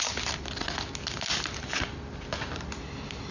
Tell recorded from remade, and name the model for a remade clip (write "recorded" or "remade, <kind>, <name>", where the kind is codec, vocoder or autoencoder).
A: recorded